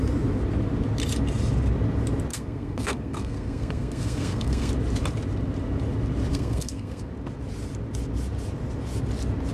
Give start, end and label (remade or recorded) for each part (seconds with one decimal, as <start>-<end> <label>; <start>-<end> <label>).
0.0-2.3 recorded; 2.3-4.7 remade; 4.7-6.3 recorded; 6.3-7.1 remade; 7.1-9.5 recorded